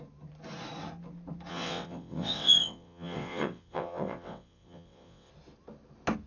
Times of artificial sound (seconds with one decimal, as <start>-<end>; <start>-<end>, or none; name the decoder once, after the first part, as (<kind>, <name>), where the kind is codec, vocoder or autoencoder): 1.5-5.3 (vocoder, WaveNeXt)